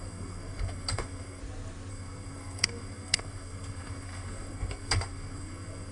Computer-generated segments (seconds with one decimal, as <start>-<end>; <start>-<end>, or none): 0.0-1.4; 1.9-5.9